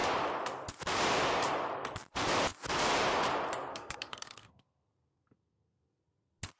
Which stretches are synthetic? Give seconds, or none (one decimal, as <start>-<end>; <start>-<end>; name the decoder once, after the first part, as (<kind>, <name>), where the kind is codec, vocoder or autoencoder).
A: 3.7-6.0 (codec, SNAC)